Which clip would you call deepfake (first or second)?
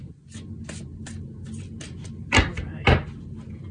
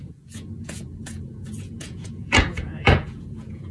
second